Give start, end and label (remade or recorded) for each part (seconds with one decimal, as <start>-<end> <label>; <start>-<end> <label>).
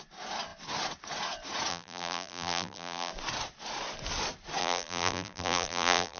0.0-1.7 recorded; 1.7-3.1 remade; 3.1-4.6 recorded; 4.6-6.2 remade